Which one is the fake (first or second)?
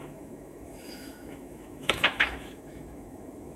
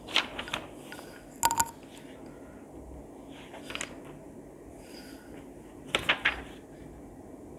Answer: first